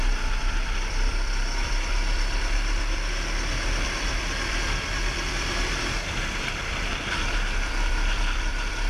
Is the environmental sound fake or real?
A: fake